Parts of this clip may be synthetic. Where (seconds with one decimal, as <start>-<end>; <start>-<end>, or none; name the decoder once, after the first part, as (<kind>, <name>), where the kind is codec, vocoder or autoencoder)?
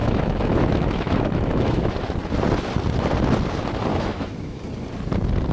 0.0-1.9 (autoencoder, DAC-VAE); 3.9-4.6